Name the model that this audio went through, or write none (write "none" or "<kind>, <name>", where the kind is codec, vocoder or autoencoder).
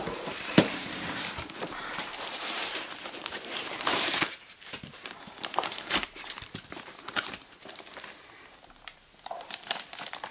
vocoder, BigVGAN v2